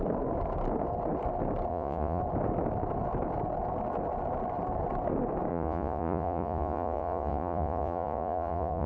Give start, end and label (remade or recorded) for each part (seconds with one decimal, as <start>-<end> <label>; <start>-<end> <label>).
0.0-1.7 recorded; 1.7-2.2 remade; 2.2-5.5 recorded; 5.5-8.9 remade